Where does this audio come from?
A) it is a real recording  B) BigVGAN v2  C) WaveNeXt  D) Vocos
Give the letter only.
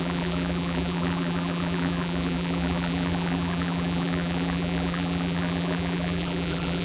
B